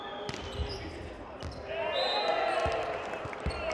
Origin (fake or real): real